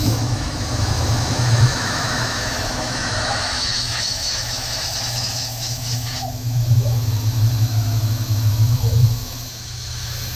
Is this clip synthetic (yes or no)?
yes